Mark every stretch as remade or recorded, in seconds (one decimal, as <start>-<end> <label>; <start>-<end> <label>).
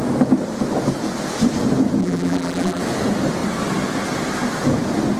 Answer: 0.0-2.0 recorded; 2.0-2.8 remade; 2.8-5.2 recorded